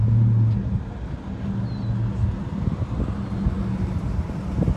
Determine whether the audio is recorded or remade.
recorded